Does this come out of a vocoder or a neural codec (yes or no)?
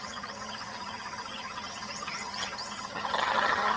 yes